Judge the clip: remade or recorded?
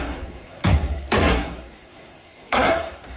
remade